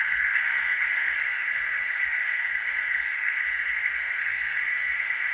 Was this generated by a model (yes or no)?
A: yes